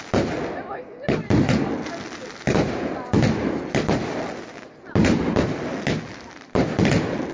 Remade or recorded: recorded